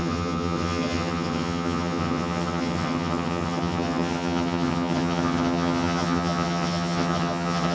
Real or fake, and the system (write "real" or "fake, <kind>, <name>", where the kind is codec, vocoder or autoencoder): fake, vocoder, HiFi-GAN